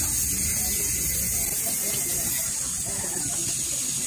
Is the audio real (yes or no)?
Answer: yes